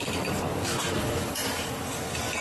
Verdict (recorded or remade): remade